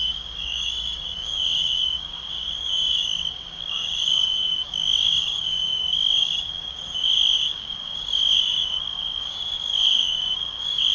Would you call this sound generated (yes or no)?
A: yes